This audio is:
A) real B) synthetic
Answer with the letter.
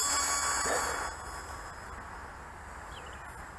A